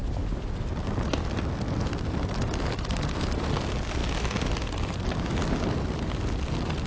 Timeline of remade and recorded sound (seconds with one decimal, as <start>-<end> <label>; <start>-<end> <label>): 0.0-6.9 recorded